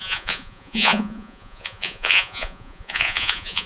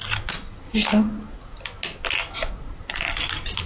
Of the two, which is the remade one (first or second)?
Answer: first